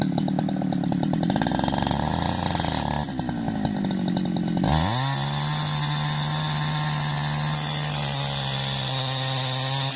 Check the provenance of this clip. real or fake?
real